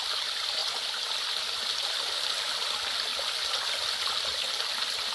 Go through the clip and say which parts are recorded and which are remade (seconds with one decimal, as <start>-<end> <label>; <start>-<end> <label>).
0.0-5.1 recorded